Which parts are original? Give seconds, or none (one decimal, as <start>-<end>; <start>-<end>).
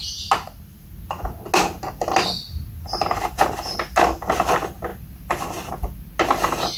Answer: 0.0-4.9; 5.7-6.8